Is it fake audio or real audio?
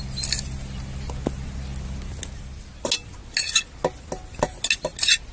real